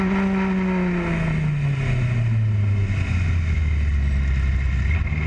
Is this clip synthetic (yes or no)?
no